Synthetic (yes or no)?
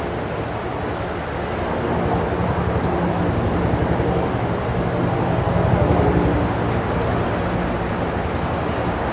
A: no